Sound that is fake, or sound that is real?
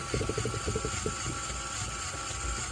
real